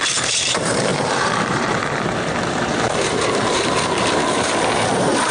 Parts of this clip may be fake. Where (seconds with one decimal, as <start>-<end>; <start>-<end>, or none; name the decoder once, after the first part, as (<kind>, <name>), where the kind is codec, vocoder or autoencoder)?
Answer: 0.0-5.3 (vocoder, BigVGAN v2)